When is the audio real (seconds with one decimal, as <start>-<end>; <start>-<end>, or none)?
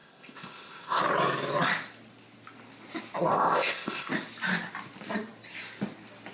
1.0-3.3; 4.1-6.3